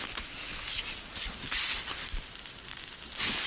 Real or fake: real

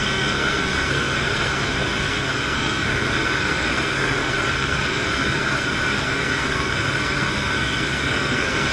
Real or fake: fake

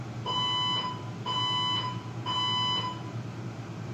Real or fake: real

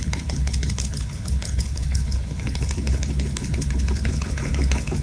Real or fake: fake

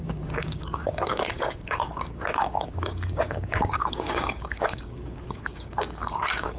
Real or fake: fake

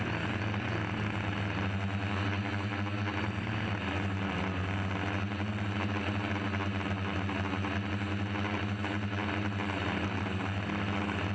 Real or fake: real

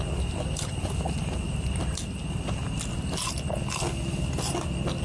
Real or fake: real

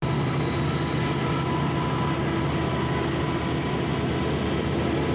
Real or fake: real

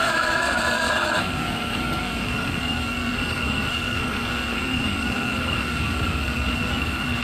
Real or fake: fake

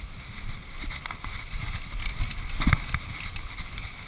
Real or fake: real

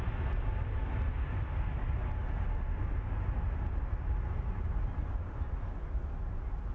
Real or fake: real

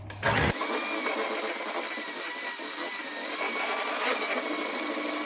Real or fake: real